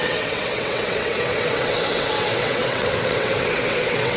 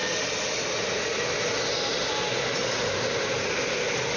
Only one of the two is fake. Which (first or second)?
first